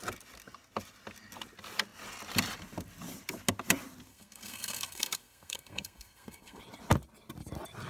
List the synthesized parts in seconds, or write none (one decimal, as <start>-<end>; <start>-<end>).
4.1-6.6